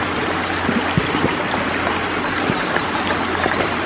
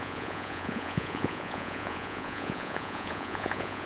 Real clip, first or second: first